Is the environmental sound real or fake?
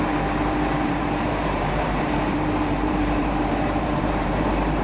fake